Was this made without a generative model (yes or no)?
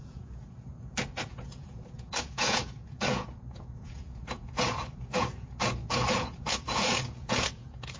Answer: no